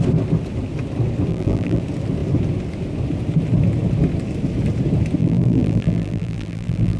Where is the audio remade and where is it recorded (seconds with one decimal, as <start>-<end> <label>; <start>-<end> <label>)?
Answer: 0.0-1.3 recorded; 1.3-1.8 remade; 1.8-5.2 recorded; 5.2-7.0 remade